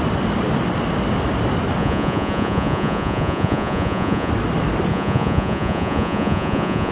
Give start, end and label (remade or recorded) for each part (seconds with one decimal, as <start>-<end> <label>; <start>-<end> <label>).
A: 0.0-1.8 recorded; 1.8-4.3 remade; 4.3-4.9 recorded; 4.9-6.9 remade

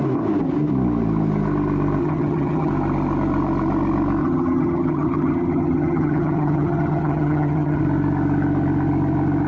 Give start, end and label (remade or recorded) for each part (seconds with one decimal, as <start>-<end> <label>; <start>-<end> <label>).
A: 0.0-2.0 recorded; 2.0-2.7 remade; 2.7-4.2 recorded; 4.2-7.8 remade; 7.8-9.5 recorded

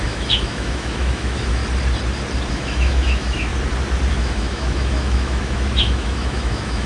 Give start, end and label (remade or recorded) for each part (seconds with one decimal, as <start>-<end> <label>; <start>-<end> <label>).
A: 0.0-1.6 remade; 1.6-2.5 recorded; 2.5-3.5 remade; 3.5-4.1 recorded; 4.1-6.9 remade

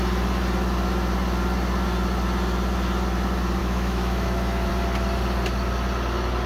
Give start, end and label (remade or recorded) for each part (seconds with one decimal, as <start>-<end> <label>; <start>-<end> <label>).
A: 0.0-3.6 recorded; 3.6-4.7 remade; 4.7-6.5 recorded

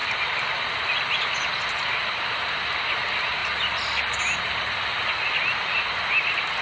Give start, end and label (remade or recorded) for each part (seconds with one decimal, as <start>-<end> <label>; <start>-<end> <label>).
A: 0.0-2.0 remade; 2.0-3.4 recorded; 3.4-4.2 remade; 4.2-6.6 recorded